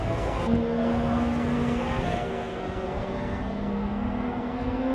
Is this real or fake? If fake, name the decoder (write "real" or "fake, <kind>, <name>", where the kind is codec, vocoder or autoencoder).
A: fake, codec, SNAC